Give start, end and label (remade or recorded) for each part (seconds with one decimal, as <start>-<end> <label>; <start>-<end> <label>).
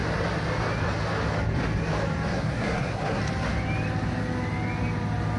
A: 0.0-2.3 recorded; 2.3-3.2 remade; 3.2-5.4 recorded